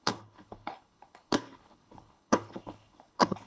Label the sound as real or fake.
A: fake